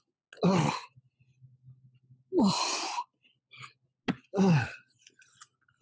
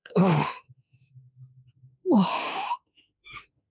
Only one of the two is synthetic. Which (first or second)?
second